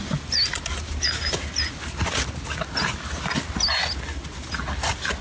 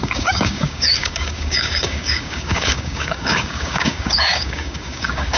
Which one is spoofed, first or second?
second